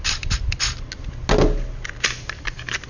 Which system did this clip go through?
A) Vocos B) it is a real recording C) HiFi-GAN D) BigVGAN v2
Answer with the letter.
B